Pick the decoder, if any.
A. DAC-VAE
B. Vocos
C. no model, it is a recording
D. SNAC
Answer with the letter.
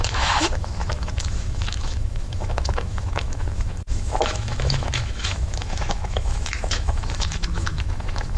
A